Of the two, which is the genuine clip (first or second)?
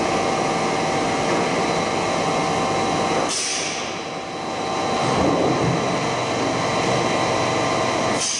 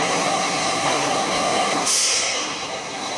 first